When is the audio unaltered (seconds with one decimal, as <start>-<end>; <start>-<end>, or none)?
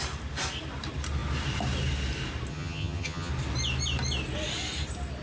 0.0-2.5; 3.3-5.2